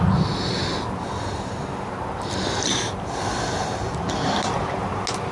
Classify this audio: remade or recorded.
recorded